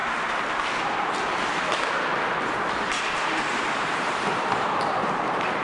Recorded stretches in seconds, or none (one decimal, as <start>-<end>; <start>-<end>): 0.0-3.0